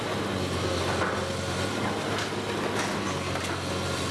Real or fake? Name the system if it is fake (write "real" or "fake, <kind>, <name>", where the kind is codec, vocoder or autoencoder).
real